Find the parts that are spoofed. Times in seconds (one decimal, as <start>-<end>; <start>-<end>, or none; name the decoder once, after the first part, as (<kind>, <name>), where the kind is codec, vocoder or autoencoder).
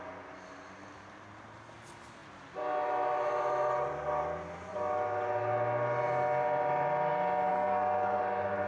7.5-8.2 (codec, SNAC)